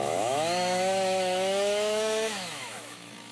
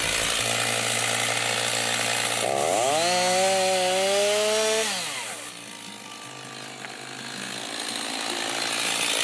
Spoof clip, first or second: first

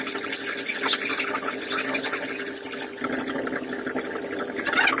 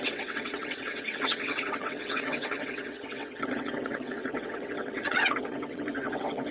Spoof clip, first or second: second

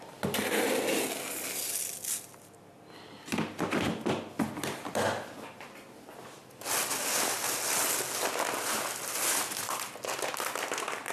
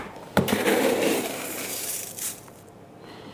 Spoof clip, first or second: second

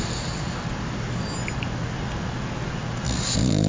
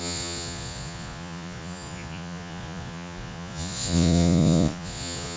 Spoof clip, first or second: second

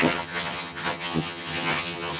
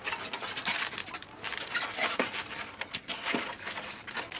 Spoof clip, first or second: first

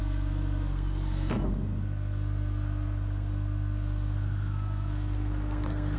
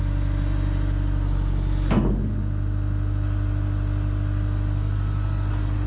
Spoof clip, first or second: first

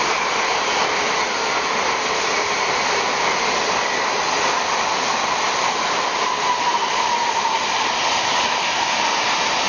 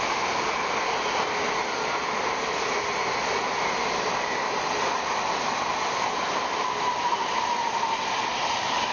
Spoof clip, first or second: first